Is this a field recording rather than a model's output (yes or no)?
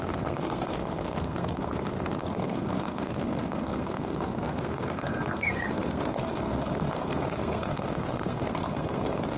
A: no